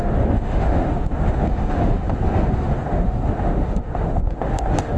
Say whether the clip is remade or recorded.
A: remade